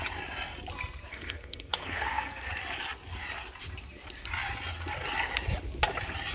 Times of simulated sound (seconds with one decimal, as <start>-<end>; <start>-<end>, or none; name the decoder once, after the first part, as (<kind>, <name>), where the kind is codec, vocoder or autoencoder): 1.1-2.5 (codec, SNAC)